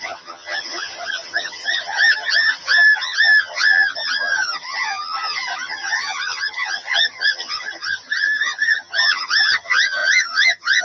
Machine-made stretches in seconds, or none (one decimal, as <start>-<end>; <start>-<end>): 0.0-10.8

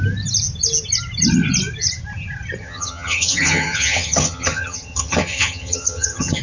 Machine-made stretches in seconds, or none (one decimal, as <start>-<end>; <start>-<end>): 2.6-6.4

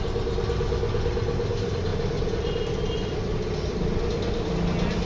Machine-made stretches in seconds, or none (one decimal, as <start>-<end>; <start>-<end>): none

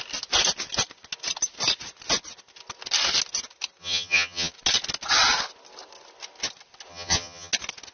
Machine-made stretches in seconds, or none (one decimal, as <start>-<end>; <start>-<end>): 3.8-4.5; 6.9-7.5

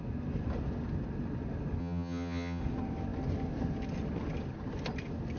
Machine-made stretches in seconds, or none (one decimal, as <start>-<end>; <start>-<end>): 1.8-2.6